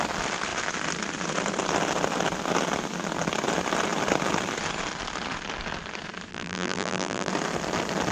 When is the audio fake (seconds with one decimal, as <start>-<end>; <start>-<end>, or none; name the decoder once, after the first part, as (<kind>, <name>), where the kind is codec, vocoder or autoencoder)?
6.3-7.3 (vocoder, BigVGAN v2)